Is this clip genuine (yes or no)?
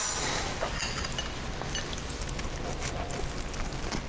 yes